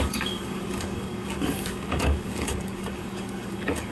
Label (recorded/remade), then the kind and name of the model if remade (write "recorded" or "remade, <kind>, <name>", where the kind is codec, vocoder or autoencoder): remade, codec, DAC